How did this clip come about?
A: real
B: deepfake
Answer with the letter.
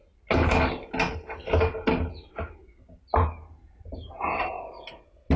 A